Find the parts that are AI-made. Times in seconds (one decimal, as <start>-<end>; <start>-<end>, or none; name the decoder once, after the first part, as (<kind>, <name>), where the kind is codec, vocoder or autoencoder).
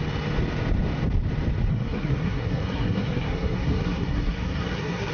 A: 1.7-5.1 (codec, SNAC)